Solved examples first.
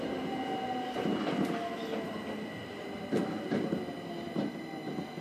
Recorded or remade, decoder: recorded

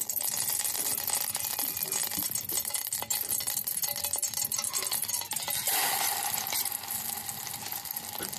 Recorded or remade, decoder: recorded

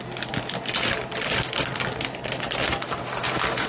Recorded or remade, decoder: recorded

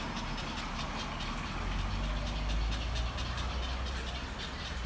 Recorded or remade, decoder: recorded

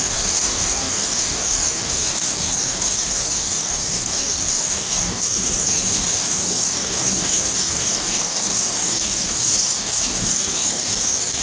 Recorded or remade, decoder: remade, codec, DAC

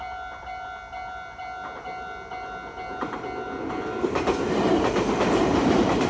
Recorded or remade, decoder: recorded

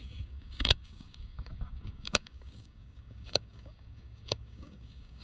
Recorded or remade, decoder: remade, codec, DAC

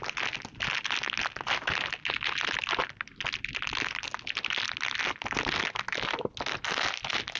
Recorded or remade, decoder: recorded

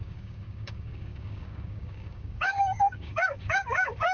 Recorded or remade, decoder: remade, codec, DAC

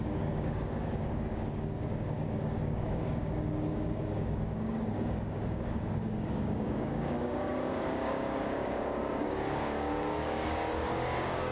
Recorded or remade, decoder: remade, codec, DAC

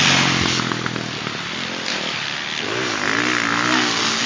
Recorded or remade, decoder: recorded